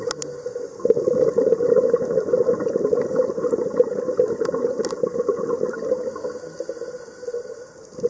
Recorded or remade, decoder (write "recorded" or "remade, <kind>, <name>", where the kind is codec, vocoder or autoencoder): recorded